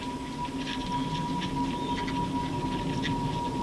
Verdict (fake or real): real